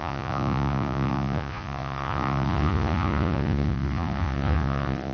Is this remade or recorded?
remade